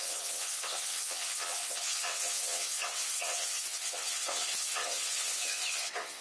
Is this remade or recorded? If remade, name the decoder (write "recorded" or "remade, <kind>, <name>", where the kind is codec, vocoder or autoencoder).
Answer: remade, vocoder, WaveNeXt